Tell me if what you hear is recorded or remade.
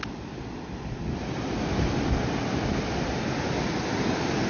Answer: recorded